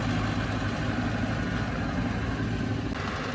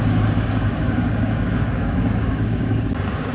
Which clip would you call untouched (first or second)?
first